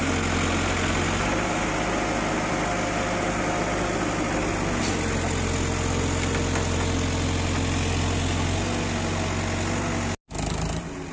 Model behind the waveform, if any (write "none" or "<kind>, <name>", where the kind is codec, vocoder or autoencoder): none